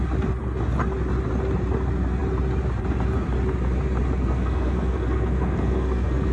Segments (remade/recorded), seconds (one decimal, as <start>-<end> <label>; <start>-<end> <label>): 0.0-4.2 recorded; 4.2-6.3 remade